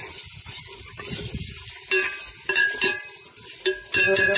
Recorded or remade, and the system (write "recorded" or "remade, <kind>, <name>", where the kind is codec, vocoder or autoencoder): recorded